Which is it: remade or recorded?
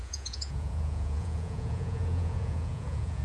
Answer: remade